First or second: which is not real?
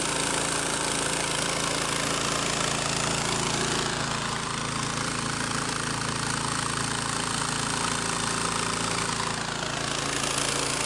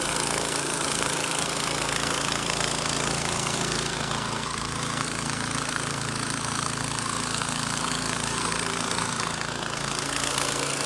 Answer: second